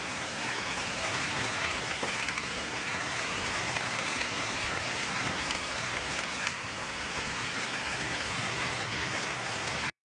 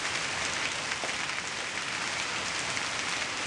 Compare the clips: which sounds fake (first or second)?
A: first